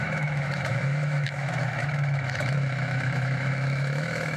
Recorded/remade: remade